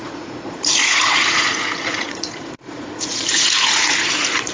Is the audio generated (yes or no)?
yes